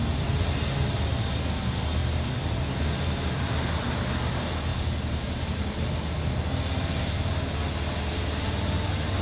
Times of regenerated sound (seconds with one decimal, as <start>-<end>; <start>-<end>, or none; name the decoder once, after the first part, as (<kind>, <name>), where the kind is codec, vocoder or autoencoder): 2.0-4.0 (vocoder, BigVGAN v2); 4.7-5.8